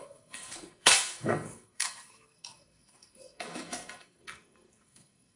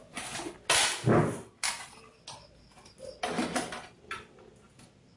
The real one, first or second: second